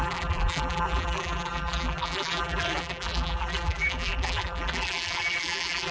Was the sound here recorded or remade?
remade